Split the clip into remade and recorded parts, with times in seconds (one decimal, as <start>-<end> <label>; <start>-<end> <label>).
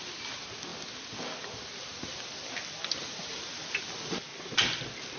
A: 0.0-5.2 recorded